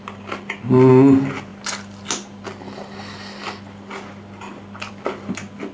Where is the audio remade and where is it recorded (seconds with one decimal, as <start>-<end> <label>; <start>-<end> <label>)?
0.0-5.7 recorded